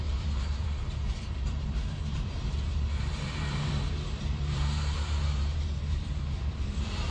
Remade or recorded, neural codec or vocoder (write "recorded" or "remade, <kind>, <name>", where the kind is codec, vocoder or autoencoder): remade, vocoder, BigVGAN v2